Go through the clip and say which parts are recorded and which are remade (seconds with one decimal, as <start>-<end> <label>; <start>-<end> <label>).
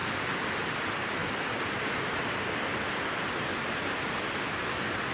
0.0-5.1 recorded